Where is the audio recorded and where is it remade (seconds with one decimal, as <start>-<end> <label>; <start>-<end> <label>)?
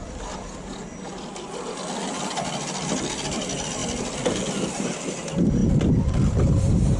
0.0-7.0 recorded